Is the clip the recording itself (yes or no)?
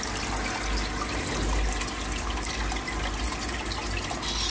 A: yes